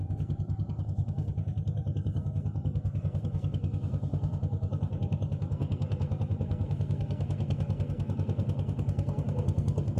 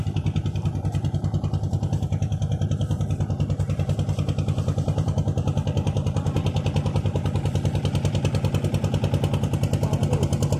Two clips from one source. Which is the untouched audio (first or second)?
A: second